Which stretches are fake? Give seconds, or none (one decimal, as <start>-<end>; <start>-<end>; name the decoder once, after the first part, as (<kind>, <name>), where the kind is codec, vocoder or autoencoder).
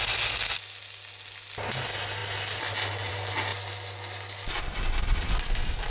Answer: none